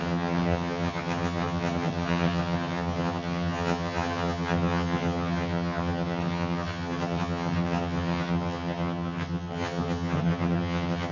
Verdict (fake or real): fake